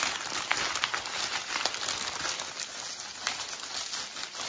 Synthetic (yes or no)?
no